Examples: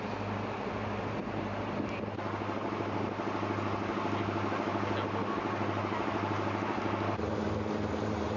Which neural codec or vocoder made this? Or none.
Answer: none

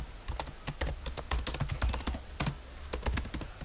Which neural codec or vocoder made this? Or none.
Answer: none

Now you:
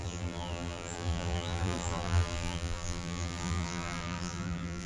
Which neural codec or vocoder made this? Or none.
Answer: vocoder, BigVGAN v2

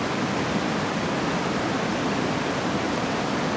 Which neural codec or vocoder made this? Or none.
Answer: none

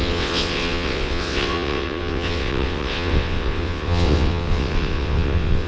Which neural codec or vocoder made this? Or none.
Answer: vocoder, WaveNeXt